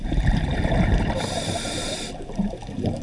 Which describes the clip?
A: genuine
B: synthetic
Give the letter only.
B